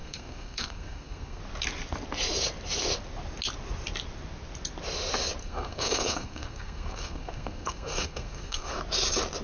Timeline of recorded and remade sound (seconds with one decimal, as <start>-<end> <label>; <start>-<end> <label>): 0.0-1.4 remade; 1.4-5.4 recorded; 5.4-8.8 remade; 8.8-9.4 recorded